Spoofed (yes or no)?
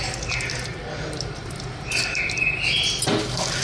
no